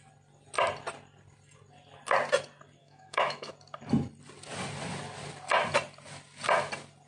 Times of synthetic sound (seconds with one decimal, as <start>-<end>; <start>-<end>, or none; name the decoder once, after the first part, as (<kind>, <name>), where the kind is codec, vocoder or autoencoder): 2.8-3.5 (autoencoder, DAC-VAE)